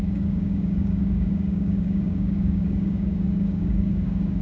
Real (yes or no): no